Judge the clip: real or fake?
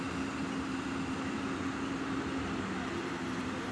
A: real